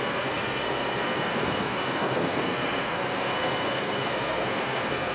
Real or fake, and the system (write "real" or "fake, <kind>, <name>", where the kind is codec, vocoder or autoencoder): fake, codec, SNAC